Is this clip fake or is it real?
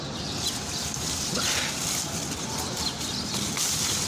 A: fake